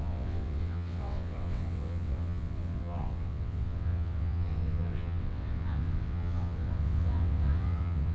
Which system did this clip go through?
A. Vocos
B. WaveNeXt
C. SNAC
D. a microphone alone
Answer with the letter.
B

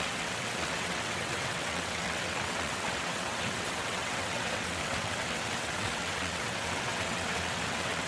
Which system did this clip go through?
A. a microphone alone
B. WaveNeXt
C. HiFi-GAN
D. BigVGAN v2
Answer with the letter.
B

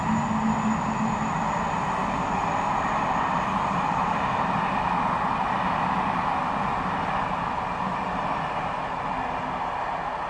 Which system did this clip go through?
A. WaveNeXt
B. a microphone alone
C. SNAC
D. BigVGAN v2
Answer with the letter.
B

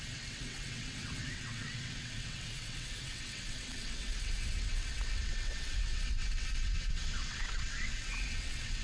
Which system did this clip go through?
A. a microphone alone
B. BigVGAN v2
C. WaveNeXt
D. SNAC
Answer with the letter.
C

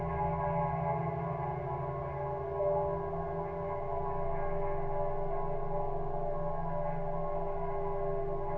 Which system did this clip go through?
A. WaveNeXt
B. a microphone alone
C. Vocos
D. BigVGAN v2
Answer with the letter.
B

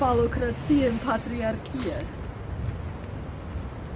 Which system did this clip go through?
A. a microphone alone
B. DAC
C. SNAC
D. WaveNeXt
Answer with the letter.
A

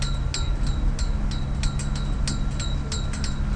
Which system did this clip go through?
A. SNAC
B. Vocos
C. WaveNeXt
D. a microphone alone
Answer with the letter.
D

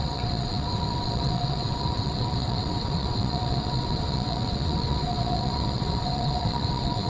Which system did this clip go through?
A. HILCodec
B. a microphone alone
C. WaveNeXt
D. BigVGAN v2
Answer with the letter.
C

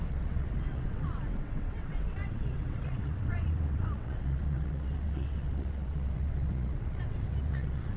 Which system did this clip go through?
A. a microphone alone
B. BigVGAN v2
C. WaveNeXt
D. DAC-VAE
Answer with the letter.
C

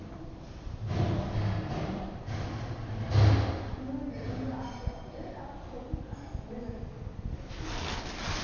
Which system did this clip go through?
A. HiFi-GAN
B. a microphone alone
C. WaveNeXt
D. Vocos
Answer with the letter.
B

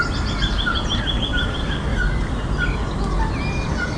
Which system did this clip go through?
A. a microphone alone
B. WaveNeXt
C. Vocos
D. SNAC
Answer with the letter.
A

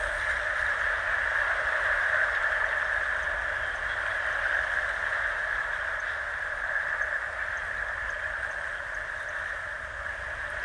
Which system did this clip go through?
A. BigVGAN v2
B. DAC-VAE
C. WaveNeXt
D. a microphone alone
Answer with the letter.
D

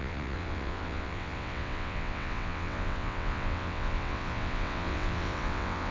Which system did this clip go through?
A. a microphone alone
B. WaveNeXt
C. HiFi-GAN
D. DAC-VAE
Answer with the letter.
B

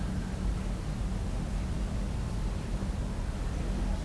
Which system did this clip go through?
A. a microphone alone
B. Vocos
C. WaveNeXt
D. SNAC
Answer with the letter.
A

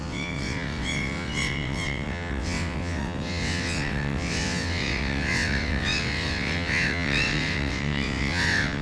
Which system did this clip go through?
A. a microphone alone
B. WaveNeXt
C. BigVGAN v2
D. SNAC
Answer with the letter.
B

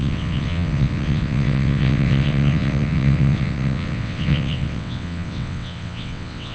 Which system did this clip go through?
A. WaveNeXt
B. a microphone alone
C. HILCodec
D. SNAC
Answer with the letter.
A